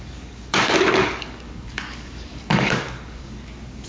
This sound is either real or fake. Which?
fake